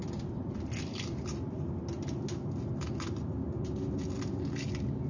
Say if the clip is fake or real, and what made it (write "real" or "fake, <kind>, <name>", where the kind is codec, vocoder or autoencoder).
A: real